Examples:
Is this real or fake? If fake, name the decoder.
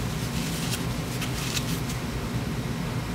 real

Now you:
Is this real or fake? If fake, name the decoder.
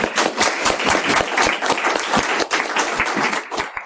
real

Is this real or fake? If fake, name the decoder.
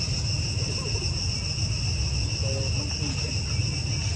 real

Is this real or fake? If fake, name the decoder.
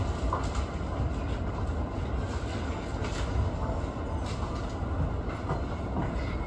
real